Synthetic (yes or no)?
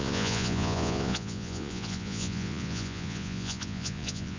yes